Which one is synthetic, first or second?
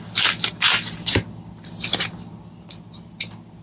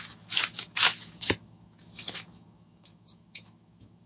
second